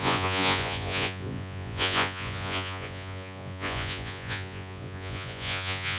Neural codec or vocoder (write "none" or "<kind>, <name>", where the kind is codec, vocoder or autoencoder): vocoder, Vocos